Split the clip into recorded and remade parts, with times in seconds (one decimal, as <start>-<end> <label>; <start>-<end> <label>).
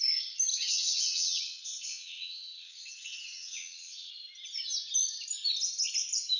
0.0-0.5 recorded; 0.5-4.1 remade; 4.1-6.4 recorded